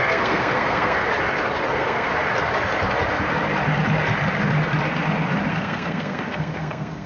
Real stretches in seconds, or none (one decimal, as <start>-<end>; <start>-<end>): 1.0-1.7; 2.1-5.5